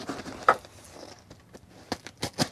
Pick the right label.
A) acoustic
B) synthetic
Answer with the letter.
A